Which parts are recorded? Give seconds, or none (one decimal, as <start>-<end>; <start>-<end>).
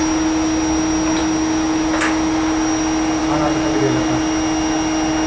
0.0-5.3